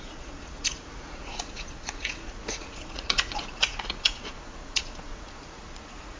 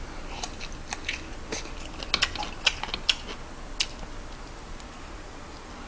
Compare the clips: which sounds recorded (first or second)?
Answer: second